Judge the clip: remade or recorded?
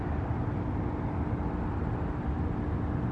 recorded